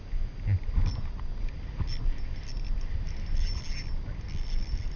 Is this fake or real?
real